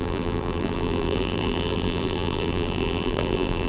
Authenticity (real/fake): fake